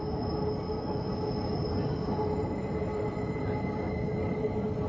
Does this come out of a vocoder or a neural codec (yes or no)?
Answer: no